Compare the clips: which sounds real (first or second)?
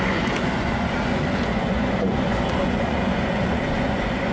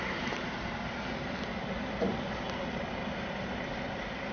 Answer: second